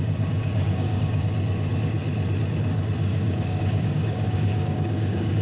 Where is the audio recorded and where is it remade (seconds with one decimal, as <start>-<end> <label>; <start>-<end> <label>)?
0.0-0.4 recorded; 0.4-1.2 remade; 1.2-3.1 recorded; 3.1-5.4 remade